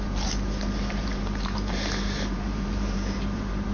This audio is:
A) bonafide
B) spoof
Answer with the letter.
B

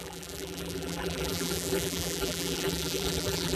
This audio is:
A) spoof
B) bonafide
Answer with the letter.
A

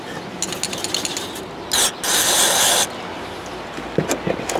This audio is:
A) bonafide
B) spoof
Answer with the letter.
A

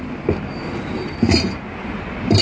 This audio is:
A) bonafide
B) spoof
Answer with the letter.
A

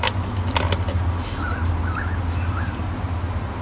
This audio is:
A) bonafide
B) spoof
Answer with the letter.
A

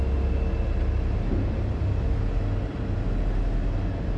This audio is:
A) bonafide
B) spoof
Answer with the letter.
A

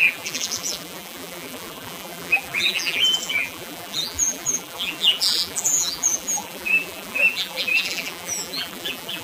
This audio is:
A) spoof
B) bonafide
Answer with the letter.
A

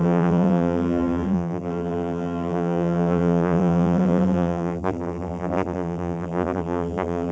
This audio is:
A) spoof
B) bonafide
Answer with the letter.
A